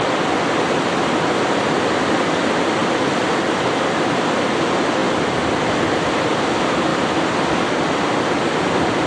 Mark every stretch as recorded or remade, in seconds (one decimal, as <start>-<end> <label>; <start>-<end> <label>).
0.0-6.9 recorded; 6.9-7.7 remade; 7.7-9.1 recorded